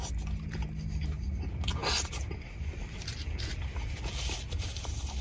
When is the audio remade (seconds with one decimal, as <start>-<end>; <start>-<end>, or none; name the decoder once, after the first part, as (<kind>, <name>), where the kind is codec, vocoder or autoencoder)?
1.8-5.2 (vocoder, BigVGAN v2)